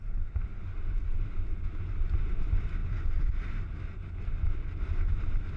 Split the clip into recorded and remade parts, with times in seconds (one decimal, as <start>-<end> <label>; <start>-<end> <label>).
0.0-4.9 recorded; 4.9-5.6 remade